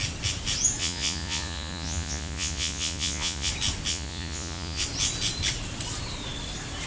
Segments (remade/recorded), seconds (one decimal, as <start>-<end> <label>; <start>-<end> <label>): 0.0-0.8 recorded; 0.8-3.5 remade; 3.5-3.9 recorded; 3.9-4.8 remade; 4.8-6.9 recorded